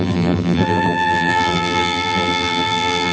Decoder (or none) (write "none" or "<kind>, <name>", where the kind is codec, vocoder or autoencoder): vocoder, BigVGAN v2